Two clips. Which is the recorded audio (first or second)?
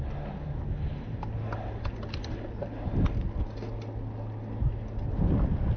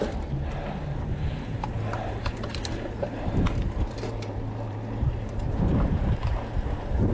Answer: first